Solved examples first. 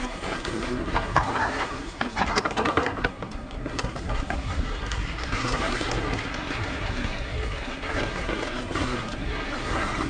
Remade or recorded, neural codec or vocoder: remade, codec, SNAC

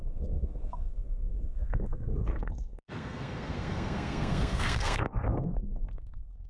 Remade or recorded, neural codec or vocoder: remade, codec, SNAC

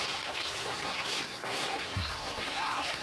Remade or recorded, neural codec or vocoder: remade, codec, SNAC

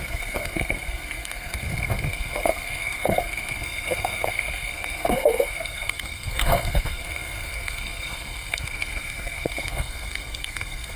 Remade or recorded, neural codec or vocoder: remade, codec, SNAC